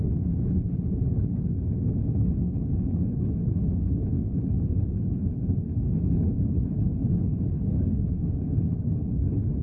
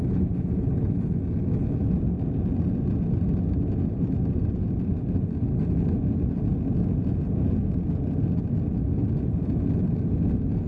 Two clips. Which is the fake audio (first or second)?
first